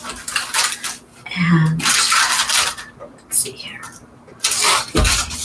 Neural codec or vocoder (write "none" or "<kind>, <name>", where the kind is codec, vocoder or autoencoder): none